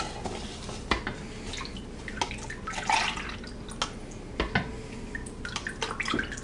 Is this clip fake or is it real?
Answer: real